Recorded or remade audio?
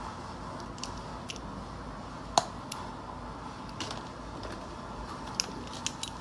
recorded